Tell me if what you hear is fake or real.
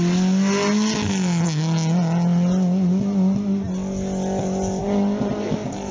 real